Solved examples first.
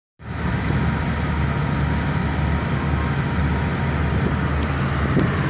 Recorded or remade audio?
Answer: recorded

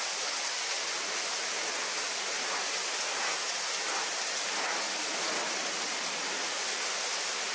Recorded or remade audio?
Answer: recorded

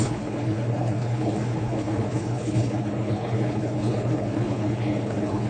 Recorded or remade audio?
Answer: remade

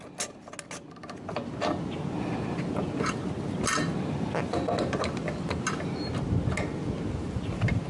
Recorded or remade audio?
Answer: recorded